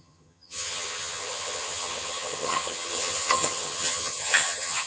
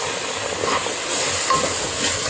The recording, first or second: second